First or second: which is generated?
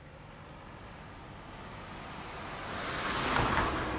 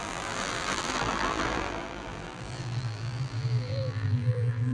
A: second